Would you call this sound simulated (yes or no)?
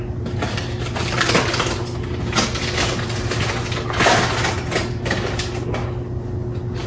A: no